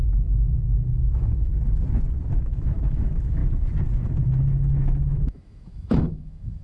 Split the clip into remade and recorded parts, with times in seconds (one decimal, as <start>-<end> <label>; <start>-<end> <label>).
0.0-0.9 recorded; 0.9-1.5 remade; 1.5-2.4 recorded; 2.4-3.4 remade; 3.4-5.1 recorded; 5.1-6.6 remade